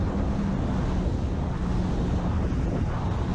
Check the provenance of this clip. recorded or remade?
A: recorded